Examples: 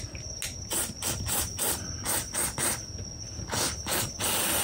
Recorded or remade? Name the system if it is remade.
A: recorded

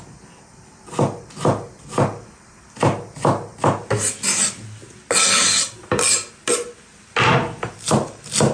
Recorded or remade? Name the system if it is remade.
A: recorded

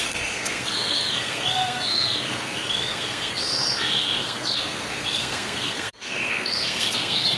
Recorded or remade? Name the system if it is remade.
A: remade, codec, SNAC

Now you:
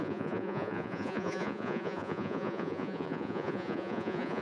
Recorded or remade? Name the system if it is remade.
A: remade, vocoder, Vocos